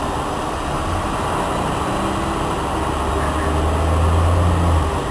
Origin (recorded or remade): recorded